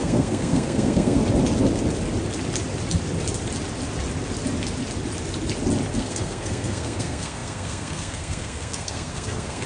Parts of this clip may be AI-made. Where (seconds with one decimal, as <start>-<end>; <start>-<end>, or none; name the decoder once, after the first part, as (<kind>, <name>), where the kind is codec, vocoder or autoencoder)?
0.0-1.2 (codec, SNAC); 5.9-9.7

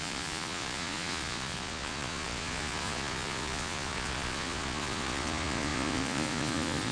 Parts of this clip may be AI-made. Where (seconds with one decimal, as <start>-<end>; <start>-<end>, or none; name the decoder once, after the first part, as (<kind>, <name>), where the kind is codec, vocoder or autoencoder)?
0.0-6.9 (vocoder, Vocos)